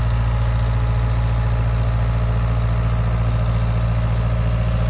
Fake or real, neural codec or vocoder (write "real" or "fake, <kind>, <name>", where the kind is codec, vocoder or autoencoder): real